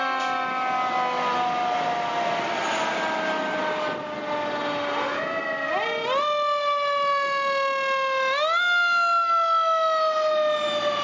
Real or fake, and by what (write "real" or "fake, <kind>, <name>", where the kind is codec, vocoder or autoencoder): real